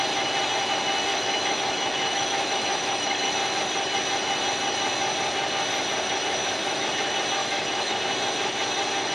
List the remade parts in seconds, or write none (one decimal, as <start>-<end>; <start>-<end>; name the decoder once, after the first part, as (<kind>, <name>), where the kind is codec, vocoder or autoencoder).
1.1-3.3 (autoencoder, DAC-VAE); 6.4-6.9; 7.4-8.0